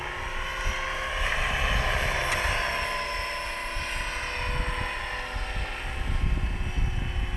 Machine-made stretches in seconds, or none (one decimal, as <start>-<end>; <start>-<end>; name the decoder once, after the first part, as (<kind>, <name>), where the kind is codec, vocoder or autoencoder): none